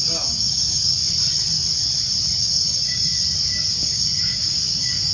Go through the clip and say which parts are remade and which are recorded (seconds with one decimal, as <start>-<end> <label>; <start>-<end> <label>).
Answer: 0.0-1.0 remade; 1.0-2.4 recorded; 2.4-3.1 remade; 3.1-3.7 recorded; 3.7-5.1 remade